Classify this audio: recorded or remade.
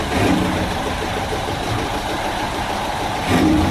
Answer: remade